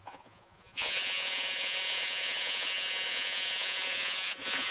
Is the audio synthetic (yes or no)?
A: yes